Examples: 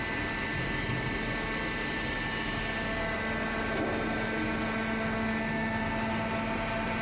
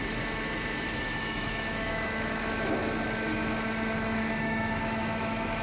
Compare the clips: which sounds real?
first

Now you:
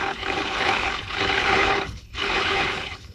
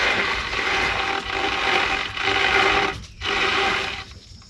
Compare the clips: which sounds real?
second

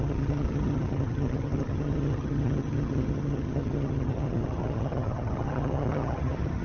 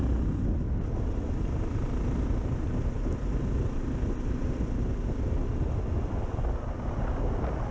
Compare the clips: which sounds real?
second